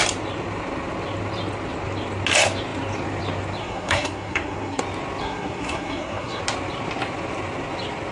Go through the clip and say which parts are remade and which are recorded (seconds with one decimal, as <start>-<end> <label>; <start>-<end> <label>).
0.0-3.6 recorded; 3.6-4.8 remade; 4.8-5.2 recorded; 5.2-6.4 remade; 6.4-8.1 recorded